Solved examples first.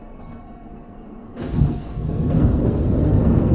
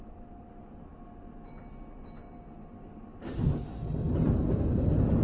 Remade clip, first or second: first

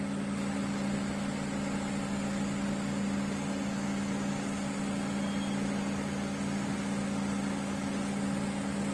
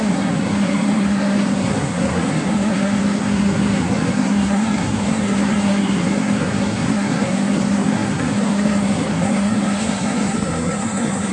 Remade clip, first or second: second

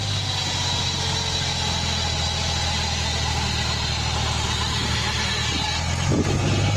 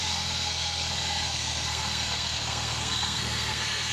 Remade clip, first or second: second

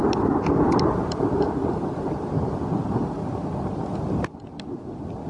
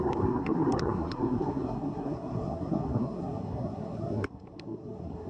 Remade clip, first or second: second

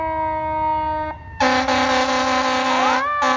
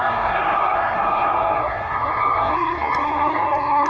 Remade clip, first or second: second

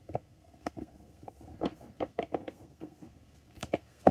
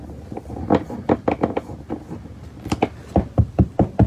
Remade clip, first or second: first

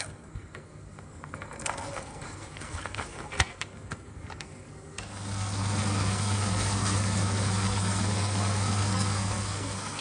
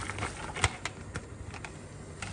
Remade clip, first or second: first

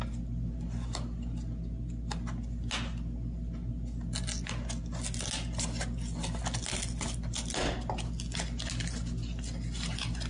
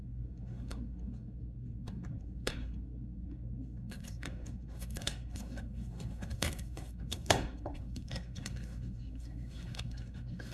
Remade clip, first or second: second